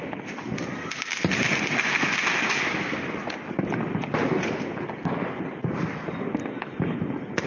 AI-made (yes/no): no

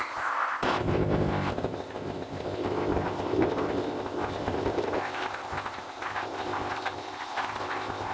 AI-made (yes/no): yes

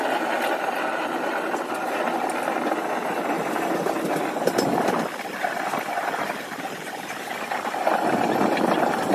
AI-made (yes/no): no